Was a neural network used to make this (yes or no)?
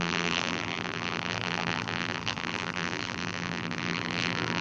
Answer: yes